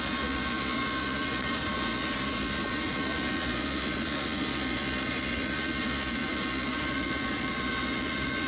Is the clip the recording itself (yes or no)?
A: no